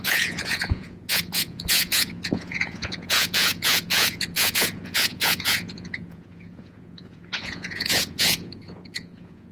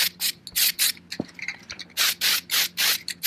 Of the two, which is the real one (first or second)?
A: second